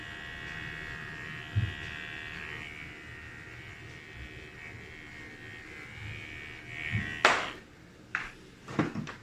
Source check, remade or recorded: recorded